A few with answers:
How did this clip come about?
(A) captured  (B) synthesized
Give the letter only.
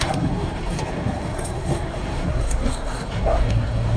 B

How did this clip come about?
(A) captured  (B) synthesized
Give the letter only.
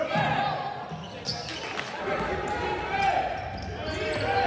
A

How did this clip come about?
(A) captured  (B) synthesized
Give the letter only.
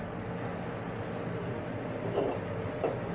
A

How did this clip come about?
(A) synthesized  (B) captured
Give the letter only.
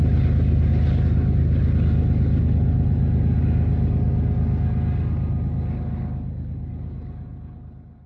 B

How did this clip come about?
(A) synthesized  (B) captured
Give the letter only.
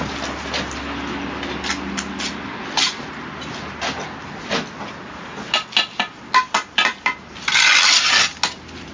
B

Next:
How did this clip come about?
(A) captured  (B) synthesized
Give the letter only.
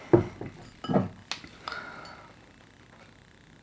A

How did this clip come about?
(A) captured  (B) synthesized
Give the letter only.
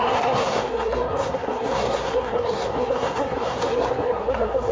B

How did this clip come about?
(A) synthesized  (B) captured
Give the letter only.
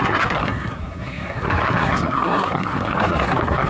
A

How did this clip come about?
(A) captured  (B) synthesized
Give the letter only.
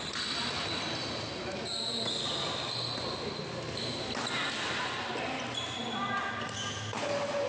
A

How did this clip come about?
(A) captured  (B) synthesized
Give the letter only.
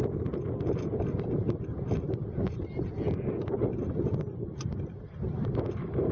A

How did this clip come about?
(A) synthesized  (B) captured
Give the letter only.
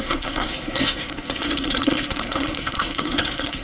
A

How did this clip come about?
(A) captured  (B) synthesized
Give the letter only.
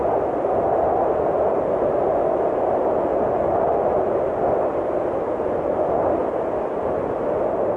A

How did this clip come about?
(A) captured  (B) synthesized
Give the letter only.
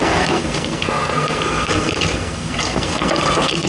B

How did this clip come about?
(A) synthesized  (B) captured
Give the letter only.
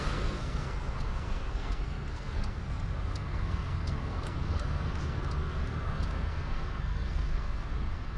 A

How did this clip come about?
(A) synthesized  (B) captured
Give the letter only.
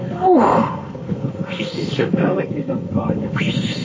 A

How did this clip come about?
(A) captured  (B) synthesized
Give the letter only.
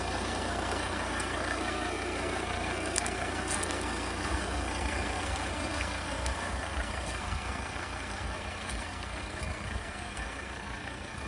B